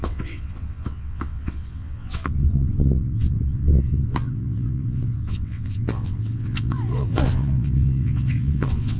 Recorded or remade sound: remade